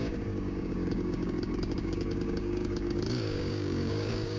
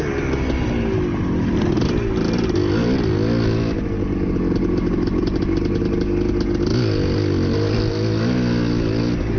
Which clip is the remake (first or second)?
first